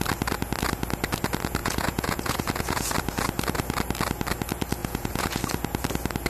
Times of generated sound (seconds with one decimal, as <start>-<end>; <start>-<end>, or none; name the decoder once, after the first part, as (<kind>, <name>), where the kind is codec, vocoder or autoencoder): 1.6-2.9 (vocoder, Vocos); 4.8-5.4